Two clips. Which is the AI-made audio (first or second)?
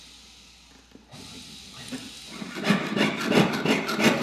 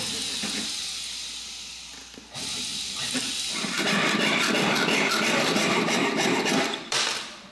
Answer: second